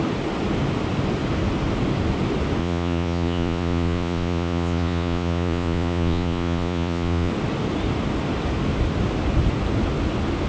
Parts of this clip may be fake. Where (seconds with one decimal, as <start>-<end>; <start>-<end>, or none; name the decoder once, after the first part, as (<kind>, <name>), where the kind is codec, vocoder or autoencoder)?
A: 2.6-7.3 (vocoder, Vocos)